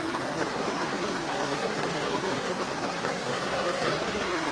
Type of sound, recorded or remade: remade